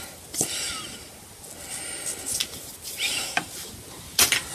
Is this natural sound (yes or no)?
yes